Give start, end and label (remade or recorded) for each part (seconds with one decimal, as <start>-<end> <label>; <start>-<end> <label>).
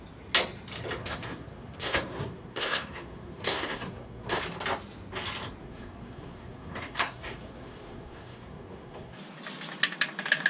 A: 0.0-1.0 recorded; 1.0-4.4 remade; 4.4-5.6 recorded; 5.6-9.2 remade; 9.2-10.5 recorded